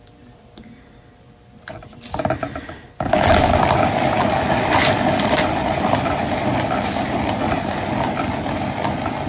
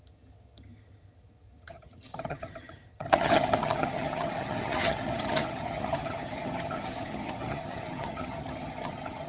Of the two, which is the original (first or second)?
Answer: first